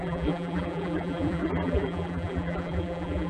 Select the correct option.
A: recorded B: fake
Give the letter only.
B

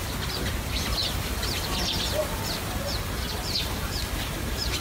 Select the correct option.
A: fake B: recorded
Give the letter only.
A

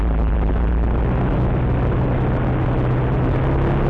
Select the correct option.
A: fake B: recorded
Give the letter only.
B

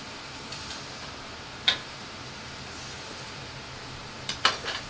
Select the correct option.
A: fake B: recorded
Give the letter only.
A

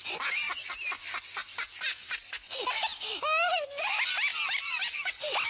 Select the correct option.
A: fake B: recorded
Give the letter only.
B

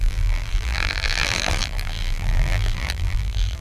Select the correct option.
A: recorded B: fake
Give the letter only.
B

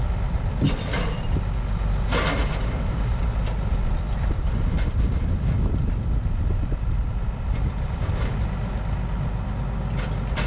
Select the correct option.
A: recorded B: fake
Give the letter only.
A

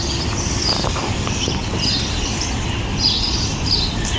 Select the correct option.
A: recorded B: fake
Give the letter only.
A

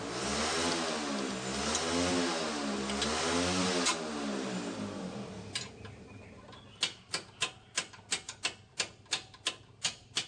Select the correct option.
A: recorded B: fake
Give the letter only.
A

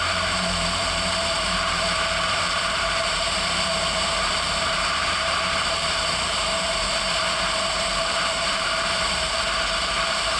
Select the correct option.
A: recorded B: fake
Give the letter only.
B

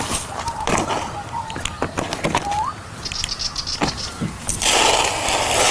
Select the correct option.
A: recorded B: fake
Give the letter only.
A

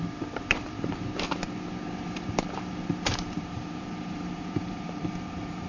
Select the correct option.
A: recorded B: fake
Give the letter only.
B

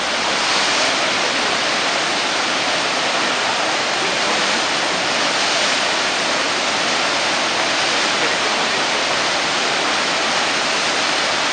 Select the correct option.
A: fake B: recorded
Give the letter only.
B